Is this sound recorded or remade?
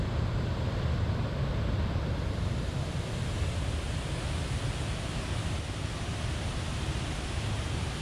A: recorded